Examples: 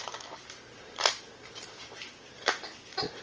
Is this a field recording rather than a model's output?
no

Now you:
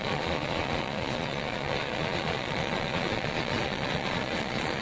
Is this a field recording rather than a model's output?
no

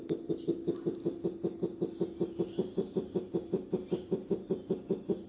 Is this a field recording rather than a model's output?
yes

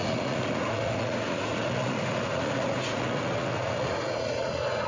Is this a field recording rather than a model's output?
no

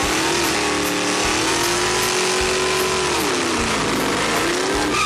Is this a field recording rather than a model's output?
yes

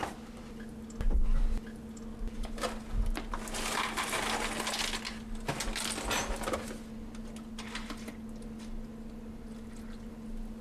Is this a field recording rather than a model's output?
yes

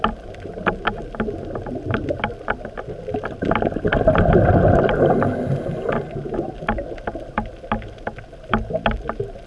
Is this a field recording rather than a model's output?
yes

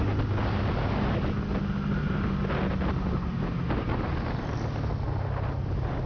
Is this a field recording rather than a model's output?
yes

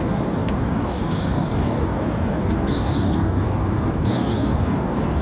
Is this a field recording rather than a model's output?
no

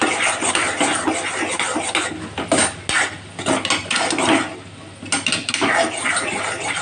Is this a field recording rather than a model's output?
yes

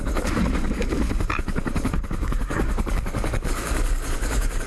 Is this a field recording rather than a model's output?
no